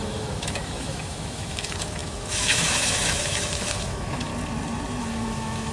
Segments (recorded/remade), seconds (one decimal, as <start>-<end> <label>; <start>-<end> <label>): 0.0-4.3 remade; 4.3-5.0 recorded; 5.0-5.7 remade